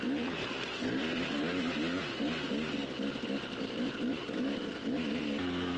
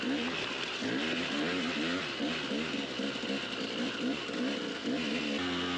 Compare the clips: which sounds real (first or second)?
second